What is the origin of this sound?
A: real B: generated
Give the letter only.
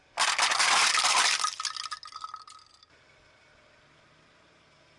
A